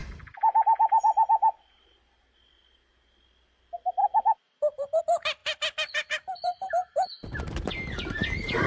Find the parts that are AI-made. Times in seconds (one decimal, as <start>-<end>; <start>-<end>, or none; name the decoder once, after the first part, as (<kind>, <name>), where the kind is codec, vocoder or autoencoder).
4.0-5.0 (vocoder, BigVGAN v2); 5.4-6.7

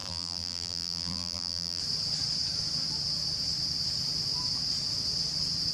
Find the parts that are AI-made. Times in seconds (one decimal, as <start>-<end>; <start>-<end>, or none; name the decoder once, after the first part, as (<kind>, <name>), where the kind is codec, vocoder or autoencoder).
0.0-1.8 (vocoder, BigVGAN v2)

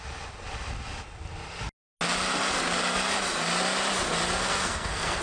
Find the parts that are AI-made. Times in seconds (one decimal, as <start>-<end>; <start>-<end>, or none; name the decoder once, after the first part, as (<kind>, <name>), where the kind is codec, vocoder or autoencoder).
4.4-5.2 (codec, SNAC)

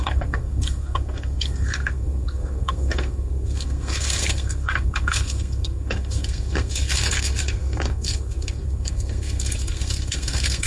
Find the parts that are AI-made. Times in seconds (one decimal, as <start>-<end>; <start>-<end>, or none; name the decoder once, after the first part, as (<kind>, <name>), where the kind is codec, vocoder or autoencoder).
0.0-10.7 (codec, SNAC)

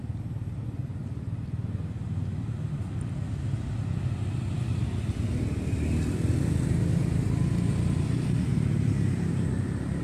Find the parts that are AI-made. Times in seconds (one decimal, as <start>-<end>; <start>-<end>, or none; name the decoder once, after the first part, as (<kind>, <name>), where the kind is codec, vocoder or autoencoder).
8.5-9.3 (vocoder, BigVGAN v2)

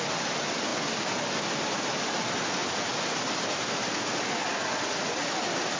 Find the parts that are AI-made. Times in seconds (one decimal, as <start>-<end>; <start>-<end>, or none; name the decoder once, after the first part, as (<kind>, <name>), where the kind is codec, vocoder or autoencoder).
none

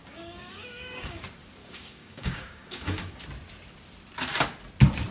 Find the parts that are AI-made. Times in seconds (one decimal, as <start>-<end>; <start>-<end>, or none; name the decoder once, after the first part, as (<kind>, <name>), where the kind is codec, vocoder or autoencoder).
0.0-1.2 (codec, DAC); 1.6-3.2